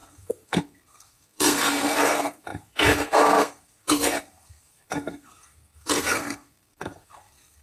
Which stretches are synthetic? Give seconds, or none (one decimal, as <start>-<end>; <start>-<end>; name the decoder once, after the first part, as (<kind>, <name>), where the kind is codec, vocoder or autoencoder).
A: 0.0-7.6 (codec, SNAC)